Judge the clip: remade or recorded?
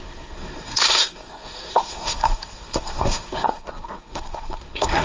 remade